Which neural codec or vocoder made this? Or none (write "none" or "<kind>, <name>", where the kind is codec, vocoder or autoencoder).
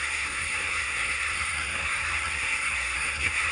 codec, SNAC